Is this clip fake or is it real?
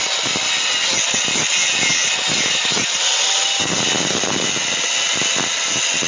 real